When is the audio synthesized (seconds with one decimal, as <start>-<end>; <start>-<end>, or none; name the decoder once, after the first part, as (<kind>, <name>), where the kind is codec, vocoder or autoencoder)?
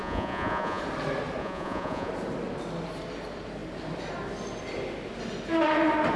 0.0-0.8 (vocoder, Vocos); 1.4-2.1